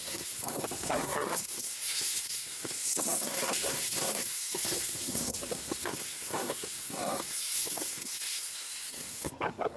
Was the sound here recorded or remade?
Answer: remade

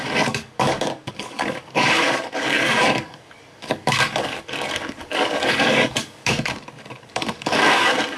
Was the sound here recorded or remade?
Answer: remade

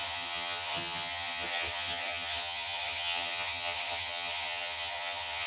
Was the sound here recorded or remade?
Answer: remade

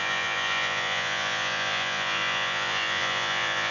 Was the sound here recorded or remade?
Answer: remade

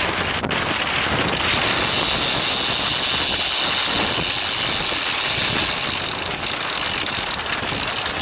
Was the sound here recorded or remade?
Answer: recorded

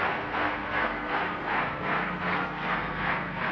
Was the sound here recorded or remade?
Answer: remade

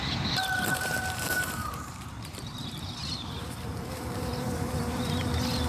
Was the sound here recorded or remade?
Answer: remade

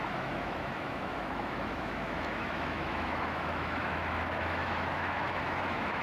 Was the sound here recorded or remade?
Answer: remade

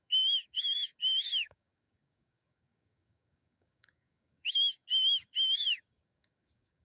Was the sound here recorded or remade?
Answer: remade